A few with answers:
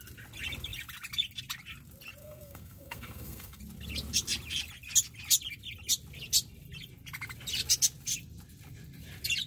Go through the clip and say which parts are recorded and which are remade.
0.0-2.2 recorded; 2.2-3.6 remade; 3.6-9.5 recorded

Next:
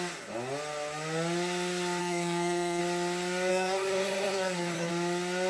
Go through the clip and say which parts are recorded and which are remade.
0.0-2.0 recorded; 2.0-2.8 remade; 2.8-3.5 recorded; 3.5-4.9 remade; 4.9-5.5 recorded

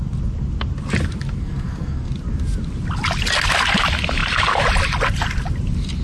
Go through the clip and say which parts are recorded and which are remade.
0.0-1.4 recorded; 1.4-2.1 remade; 2.1-6.0 recorded

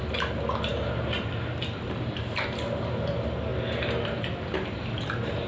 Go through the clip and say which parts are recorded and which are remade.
0.0-5.5 recorded

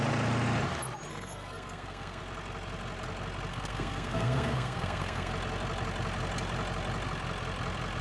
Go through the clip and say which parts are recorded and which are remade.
0.0-1.1 recorded; 1.1-2.2 remade; 2.2-3.5 recorded; 3.5-5.3 remade; 5.3-8.0 recorded

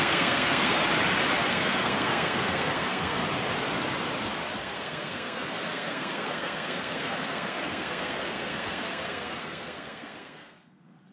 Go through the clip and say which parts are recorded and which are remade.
0.0-0.8 remade; 0.8-1.5 recorded; 1.5-3.2 remade; 3.2-4.6 recorded; 4.6-11.1 remade

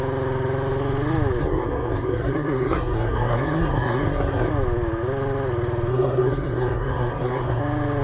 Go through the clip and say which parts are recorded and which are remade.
0.0-1.4 recorded; 1.4-4.5 remade; 4.5-5.9 recorded; 5.9-7.6 remade; 7.6-8.0 recorded

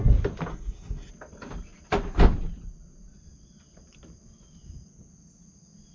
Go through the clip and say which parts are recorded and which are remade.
0.0-0.5 recorded; 0.5-1.1 remade; 1.1-5.9 recorded